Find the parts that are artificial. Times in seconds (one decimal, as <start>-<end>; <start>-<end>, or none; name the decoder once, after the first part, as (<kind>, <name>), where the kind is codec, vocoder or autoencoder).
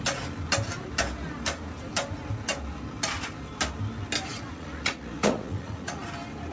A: 4.3-6.0 (vocoder, Vocos)